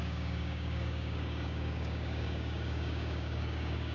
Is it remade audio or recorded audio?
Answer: remade